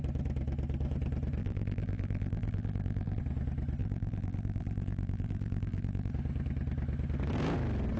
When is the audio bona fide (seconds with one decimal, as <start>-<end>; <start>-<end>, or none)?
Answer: 0.0-1.4; 3.2-3.8; 6.1-8.0